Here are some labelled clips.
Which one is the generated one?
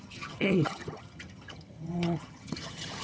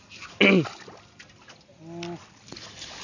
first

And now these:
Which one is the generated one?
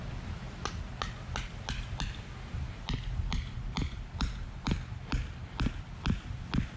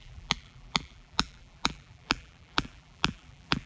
second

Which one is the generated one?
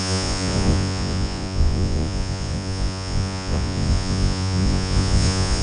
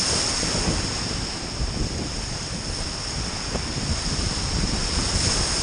first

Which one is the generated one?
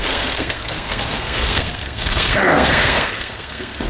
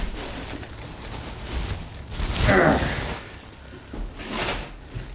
first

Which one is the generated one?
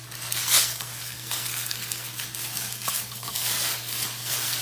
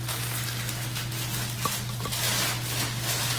first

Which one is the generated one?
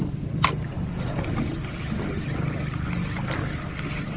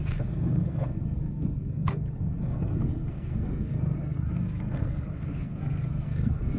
second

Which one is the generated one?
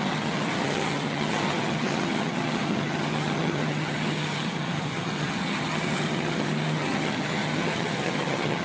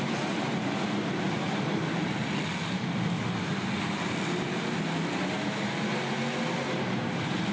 first